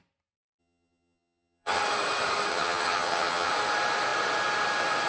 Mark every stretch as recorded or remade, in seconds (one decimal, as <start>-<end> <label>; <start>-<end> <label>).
0.0-0.6 recorded; 0.6-1.8 remade; 1.8-2.5 recorded; 2.5-3.5 remade; 3.5-5.1 recorded